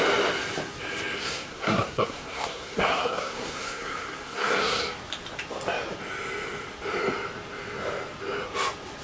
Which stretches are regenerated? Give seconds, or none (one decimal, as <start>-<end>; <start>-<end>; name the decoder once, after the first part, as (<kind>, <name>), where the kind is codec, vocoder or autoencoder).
1.2-4.8 (codec, SNAC)